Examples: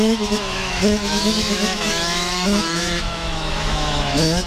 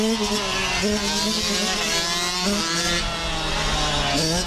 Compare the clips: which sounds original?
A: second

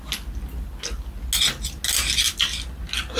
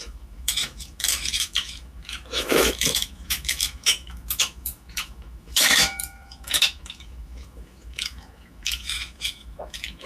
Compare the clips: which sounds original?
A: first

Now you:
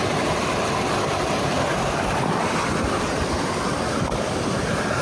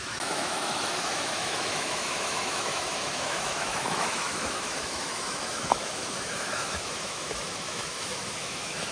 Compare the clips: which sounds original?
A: first